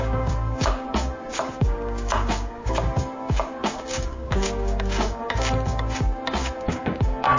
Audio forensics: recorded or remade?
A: remade